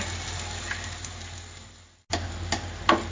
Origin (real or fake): real